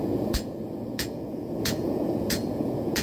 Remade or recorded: remade